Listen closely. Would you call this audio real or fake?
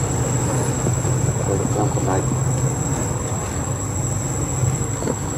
real